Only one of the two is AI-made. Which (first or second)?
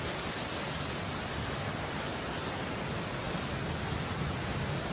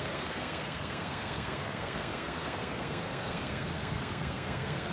second